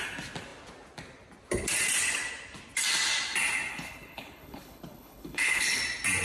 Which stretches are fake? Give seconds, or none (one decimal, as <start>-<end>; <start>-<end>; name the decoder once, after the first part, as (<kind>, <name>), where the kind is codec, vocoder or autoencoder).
3.7-5.8 (codec, HILCodec)